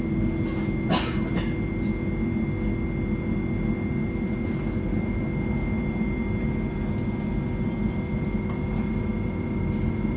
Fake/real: real